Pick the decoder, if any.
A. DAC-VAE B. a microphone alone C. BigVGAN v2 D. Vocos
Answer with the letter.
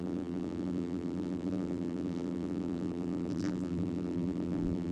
C